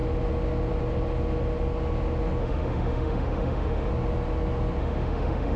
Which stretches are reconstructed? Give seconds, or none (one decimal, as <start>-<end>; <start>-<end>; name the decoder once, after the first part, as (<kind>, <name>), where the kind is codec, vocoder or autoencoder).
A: 2.4-3.9 (autoencoder, DAC-VAE); 4.8-5.6